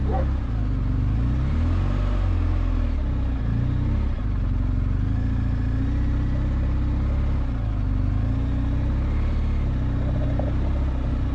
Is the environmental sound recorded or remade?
recorded